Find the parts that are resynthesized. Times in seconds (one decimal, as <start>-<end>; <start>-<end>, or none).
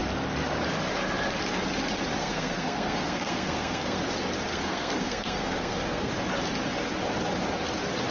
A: 2.2-4.0; 4.5-6.1